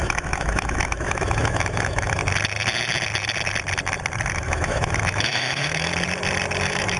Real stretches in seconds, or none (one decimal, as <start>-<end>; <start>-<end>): 2.2-4.3; 5.9-6.6